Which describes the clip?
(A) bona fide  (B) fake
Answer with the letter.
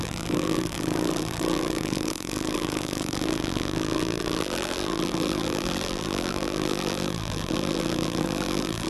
B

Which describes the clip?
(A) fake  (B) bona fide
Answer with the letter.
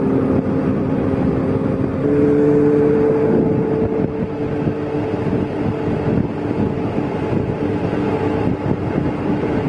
B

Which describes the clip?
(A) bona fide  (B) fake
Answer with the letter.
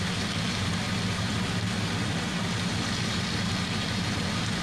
A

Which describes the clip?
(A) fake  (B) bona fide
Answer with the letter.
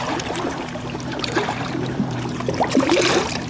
A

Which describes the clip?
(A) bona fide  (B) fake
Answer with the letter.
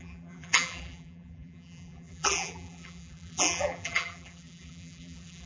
B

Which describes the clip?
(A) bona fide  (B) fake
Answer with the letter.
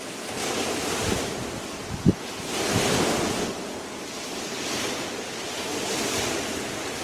A